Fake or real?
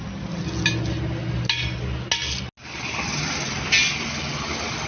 real